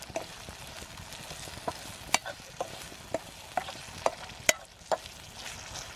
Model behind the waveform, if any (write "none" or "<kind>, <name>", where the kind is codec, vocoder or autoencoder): none